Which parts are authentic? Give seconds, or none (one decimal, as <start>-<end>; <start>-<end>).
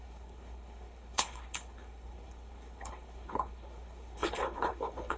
none